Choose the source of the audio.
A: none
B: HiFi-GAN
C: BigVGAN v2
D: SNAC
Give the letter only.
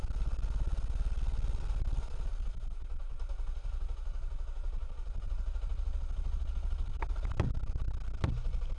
A